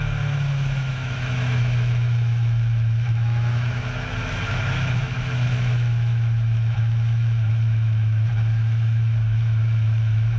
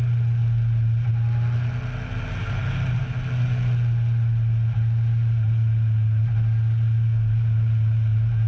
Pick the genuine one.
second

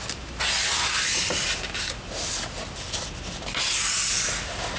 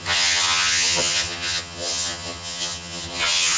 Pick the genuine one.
first